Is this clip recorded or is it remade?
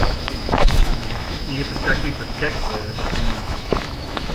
remade